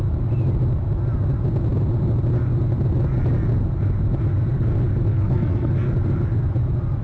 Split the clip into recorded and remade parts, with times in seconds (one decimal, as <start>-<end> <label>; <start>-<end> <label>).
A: 0.0-5.1 recorded; 5.1-5.7 remade; 5.7-7.0 recorded

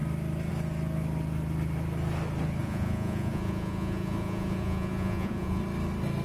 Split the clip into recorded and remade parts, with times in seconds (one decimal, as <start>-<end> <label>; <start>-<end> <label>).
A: 0.0-2.6 recorded; 2.6-5.6 remade; 5.6-6.2 recorded

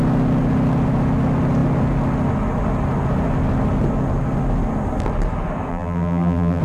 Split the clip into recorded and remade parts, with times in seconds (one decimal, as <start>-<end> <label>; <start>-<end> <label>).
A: 0.0-5.7 recorded; 5.7-6.6 remade

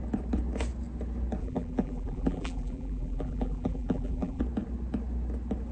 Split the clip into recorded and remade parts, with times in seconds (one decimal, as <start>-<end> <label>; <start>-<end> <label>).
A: 0.0-1.4 recorded; 1.4-4.4 remade; 4.4-5.7 recorded

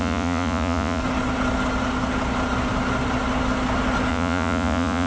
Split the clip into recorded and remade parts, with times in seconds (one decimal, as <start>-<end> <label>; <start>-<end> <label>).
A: 0.0-1.0 remade; 1.0-4.1 recorded; 4.1-5.1 remade

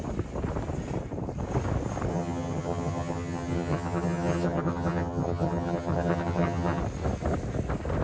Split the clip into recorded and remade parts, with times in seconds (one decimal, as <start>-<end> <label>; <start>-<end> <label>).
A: 0.0-2.1 recorded; 2.1-6.8 remade; 6.8-8.0 recorded

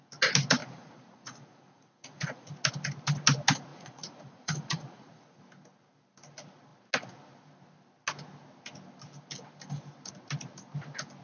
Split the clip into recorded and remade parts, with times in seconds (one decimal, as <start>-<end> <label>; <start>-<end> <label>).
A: 0.0-0.6 recorded; 0.6-2.5 remade; 2.5-3.7 recorded; 3.7-5.4 remade; 5.4-11.2 recorded